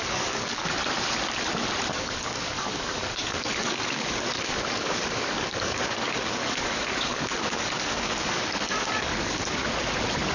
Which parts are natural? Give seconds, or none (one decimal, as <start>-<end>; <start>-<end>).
0.8-1.9; 9.6-10.3

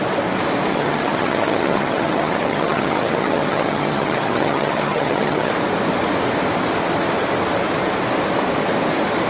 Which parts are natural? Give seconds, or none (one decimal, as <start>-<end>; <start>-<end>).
0.0-0.7; 5.5-9.3

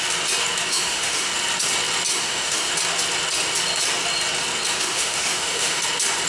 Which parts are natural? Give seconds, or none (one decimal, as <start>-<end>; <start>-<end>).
0.0-0.7; 1.3-2.1; 2.7-4.7; 5.8-6.3

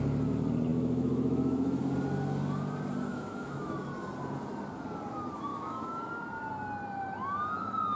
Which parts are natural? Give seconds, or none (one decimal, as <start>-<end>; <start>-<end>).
0.0-0.7; 1.8-3.1; 3.8-5.5; 6.1-8.0

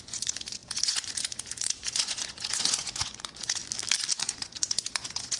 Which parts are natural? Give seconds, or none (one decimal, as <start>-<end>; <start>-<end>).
3.6-4.1